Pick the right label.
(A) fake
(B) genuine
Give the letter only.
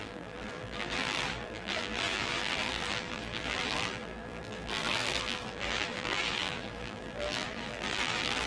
A